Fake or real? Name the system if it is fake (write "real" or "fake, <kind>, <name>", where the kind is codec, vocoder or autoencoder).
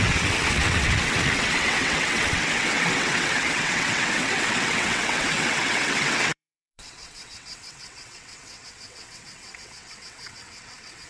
fake, vocoder, WaveNeXt